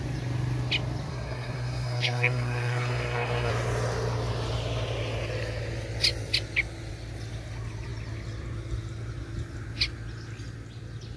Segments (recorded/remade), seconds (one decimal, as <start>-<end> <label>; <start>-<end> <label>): 0.0-1.1 recorded; 1.1-3.5 remade; 3.5-11.2 recorded